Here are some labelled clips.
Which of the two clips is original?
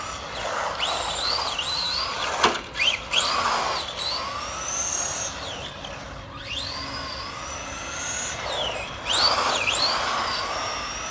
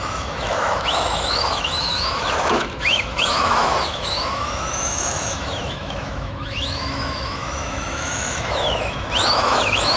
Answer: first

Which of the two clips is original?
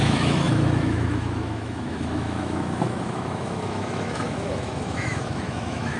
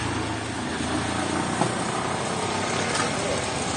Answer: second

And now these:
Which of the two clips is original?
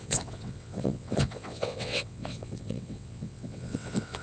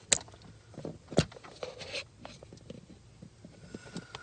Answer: second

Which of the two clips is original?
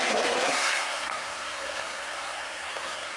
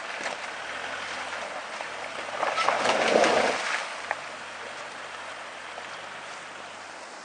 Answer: second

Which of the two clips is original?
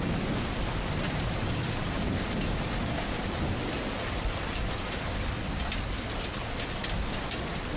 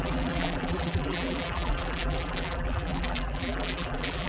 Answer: first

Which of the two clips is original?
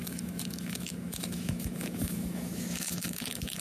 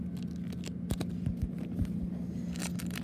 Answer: second